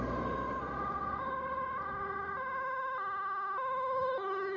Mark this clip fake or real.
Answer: real